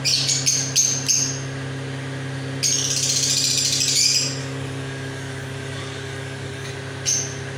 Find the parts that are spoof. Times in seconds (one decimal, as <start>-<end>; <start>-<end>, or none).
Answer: 4.4-6.7